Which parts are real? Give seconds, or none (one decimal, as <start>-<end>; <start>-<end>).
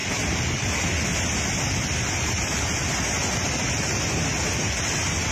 0.0-1.1; 2.8-5.3